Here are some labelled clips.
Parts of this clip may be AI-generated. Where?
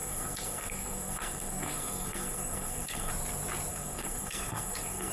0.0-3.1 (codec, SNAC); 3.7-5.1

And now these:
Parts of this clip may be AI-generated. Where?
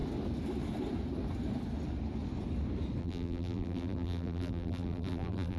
3.0-5.6 (vocoder, BigVGAN v2)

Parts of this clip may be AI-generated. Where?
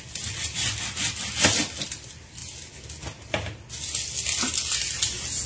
none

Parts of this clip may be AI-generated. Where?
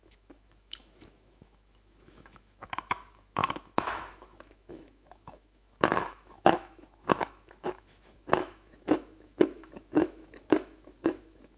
0.0-11.6 (autoencoder, DAC-VAE)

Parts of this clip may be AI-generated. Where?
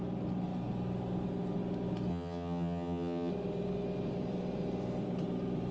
2.1-3.3 (vocoder, HiFi-GAN)